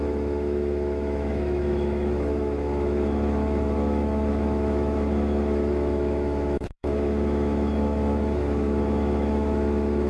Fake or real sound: fake